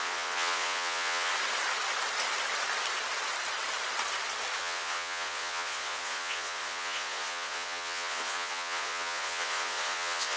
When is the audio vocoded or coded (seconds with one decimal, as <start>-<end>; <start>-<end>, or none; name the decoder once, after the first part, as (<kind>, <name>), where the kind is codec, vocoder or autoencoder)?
0.0-1.3 (vocoder, Vocos); 4.6-10.4